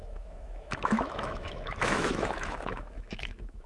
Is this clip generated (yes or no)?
yes